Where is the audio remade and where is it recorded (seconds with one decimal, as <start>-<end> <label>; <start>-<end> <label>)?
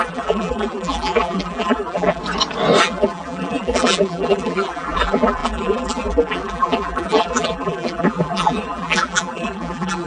0.0-2.2 remade; 2.2-2.8 recorded; 2.8-10.1 remade